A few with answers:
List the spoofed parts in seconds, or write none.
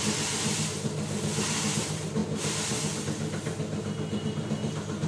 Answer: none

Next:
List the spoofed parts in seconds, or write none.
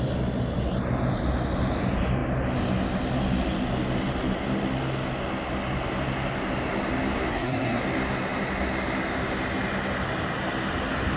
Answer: 7.3-7.8 (codec, SNAC)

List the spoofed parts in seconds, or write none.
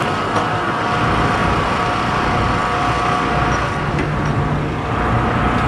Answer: none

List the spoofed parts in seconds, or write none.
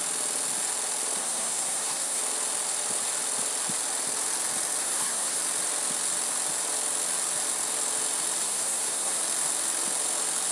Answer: 1.2-2.2 (codec, SNAC); 4.8-5.4; 8.4-9.2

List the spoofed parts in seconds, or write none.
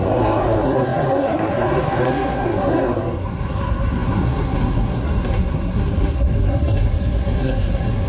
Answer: 0.0-8.1 (codec, SNAC)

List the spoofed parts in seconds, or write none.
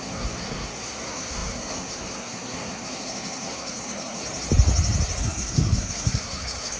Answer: 0.0-4.2 (codec, SNAC); 5.2-6.8